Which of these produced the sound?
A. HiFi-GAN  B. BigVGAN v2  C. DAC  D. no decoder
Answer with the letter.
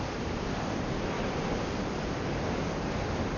D